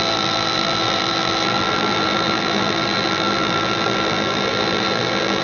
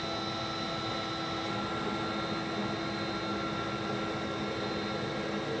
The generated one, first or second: first